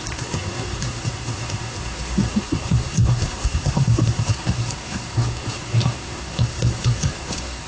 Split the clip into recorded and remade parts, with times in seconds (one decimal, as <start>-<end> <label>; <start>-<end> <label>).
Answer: 0.0-7.7 remade